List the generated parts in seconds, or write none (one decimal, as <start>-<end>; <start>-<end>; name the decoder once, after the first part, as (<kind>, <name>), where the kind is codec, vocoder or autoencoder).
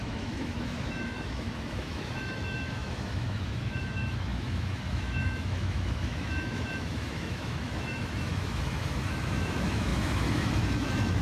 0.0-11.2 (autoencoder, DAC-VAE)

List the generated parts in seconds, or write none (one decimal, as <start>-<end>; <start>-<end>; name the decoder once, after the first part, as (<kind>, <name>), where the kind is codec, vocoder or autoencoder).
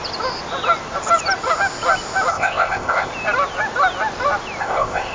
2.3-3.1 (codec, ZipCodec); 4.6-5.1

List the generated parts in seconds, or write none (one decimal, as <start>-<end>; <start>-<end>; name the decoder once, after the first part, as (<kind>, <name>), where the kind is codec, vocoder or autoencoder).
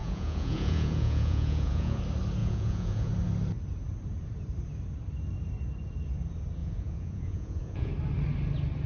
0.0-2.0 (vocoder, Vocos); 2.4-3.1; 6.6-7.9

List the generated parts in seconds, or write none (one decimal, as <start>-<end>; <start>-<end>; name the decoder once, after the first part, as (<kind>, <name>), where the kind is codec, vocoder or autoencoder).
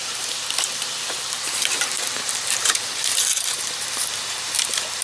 0.0-5.0 (vocoder, BigVGAN v2)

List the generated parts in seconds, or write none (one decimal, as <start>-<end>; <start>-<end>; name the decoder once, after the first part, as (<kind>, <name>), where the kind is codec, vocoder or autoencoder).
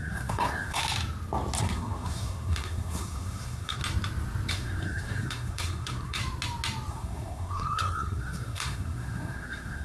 0.0-0.8 (codec, SNAC); 1.6-3.8; 4.5-6.2; 6.9-9.8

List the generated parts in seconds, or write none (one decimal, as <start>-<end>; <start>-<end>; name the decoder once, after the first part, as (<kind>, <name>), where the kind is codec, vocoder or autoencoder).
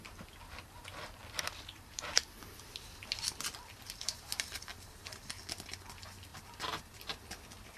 1.2-3.8 (vocoder, BigVGAN v2); 4.7-5.4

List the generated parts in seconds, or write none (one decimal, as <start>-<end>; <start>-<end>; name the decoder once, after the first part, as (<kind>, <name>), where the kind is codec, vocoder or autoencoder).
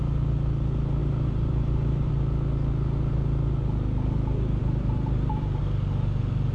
1.0-2.1 (vocoder, BigVGAN v2); 4.6-5.6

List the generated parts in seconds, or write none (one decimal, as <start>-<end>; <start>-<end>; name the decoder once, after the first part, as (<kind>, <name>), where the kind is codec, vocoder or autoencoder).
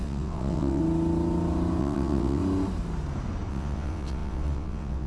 0.0-0.8 (vocoder, WaveNeXt); 1.8-2.4; 3.5-5.1